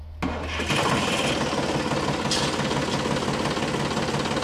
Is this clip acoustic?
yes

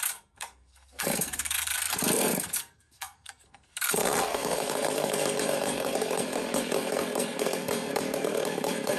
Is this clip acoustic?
no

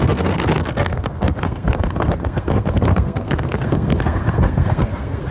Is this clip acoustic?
no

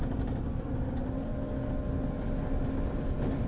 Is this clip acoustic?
yes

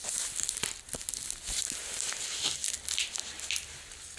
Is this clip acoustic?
yes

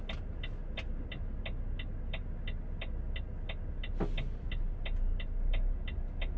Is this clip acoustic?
yes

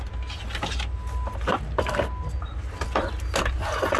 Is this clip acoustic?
yes